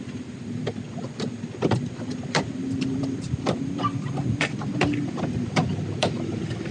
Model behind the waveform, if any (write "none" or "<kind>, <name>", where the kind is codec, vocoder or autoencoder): vocoder, BigVGAN v2